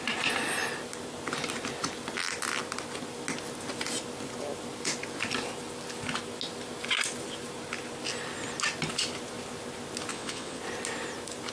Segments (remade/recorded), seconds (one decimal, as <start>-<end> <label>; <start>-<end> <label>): 0.0-10.1 recorded; 10.1-10.6 remade; 10.6-11.5 recorded